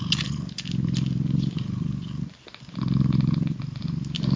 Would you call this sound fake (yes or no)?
no